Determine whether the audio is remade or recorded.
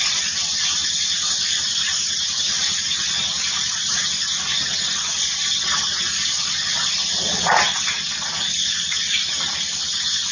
recorded